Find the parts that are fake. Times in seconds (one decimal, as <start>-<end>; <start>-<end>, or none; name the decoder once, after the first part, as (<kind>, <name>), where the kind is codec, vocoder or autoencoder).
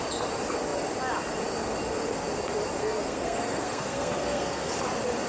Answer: 2.8-4.7 (codec, SNAC)